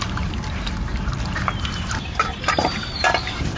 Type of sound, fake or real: fake